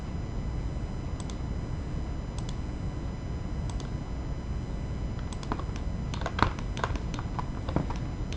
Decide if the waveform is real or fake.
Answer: real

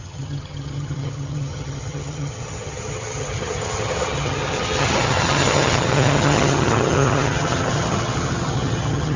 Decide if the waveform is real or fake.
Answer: fake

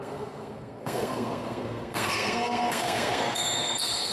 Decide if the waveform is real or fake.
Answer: fake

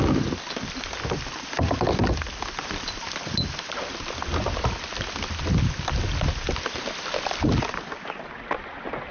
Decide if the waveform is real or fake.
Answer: real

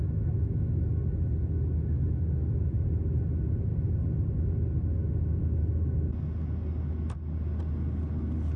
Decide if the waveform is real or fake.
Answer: real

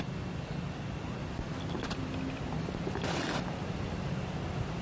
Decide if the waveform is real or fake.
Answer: real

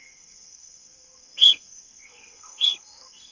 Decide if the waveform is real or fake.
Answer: fake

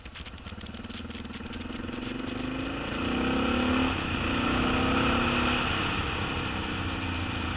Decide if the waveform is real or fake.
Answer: real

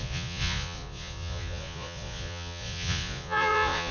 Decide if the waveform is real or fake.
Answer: fake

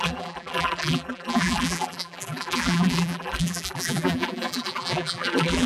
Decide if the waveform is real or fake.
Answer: fake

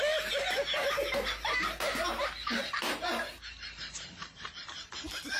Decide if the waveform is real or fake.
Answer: real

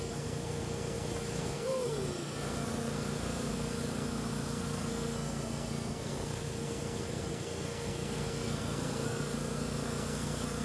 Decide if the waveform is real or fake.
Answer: fake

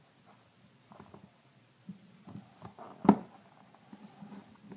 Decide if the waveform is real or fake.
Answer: real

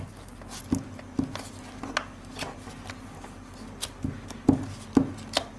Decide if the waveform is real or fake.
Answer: real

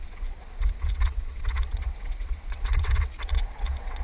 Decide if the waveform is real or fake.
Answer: fake